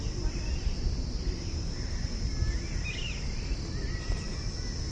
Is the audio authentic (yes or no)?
yes